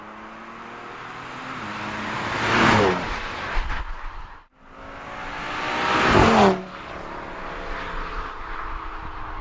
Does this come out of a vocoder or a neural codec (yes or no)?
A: no